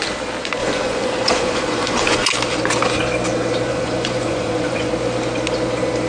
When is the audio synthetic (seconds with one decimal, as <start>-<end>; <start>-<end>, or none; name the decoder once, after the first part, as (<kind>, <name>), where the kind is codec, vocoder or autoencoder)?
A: 0.6-2.3 (vocoder, Vocos); 3.7-4.9